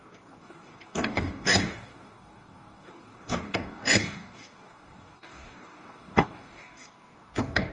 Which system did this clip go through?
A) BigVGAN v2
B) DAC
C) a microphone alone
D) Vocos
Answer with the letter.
B